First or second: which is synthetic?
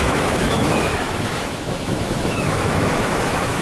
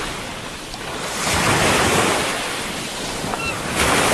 first